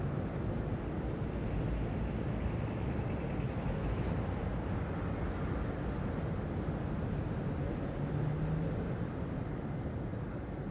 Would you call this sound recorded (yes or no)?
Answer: yes